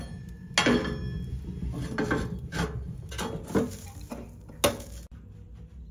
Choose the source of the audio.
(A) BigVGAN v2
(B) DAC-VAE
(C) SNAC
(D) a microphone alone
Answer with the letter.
D